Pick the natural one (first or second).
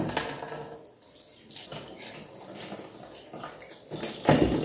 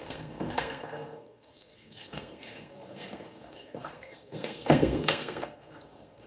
first